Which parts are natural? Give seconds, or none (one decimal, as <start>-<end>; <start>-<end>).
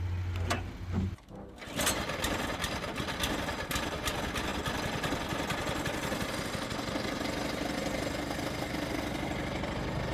0.0-10.1